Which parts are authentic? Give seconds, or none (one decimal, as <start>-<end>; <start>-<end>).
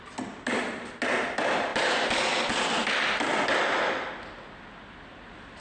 0.0-5.6